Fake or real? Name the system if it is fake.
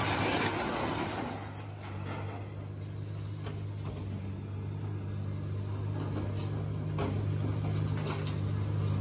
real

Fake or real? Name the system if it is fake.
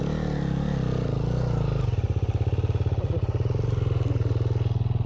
real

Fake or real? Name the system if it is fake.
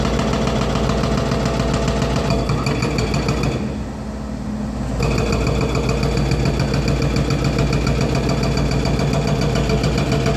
real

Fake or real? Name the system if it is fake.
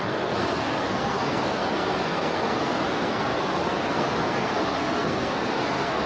fake, codec, SNAC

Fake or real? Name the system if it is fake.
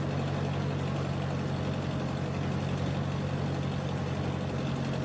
real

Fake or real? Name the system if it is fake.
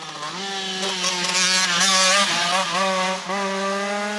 real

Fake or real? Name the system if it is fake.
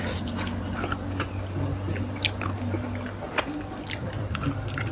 real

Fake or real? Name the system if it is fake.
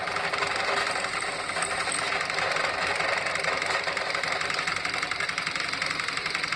fake, vocoder, BigVGAN v2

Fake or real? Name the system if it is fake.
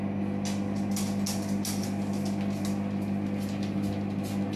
real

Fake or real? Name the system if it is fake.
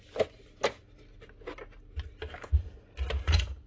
real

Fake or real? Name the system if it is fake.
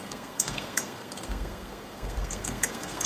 fake, codec, SNAC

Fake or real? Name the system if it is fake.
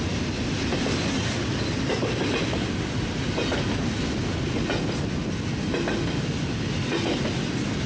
real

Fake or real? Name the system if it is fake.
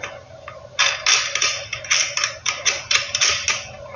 real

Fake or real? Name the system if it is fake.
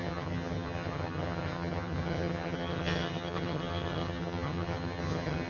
fake, vocoder, HiFi-GAN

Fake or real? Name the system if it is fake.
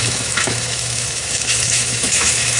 fake, autoencoder, DAC-VAE